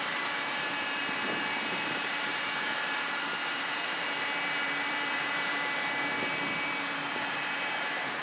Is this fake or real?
fake